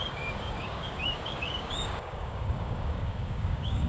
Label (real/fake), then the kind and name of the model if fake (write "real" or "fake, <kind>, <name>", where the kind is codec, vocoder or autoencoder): fake, codec, DAC